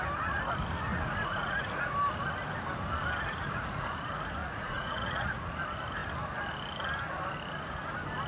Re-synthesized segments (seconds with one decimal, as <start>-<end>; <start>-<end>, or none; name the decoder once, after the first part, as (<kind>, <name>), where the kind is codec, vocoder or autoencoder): 0.9-1.9 (vocoder, Vocos); 3.2-3.9; 4.4-5.5